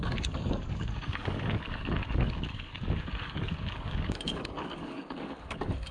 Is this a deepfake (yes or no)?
yes